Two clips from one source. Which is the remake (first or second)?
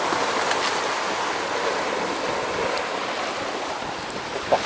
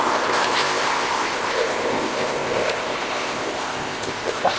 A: second